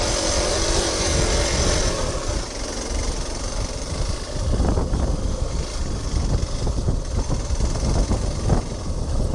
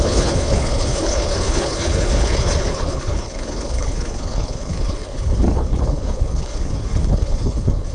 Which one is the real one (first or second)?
first